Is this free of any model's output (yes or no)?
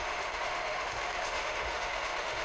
no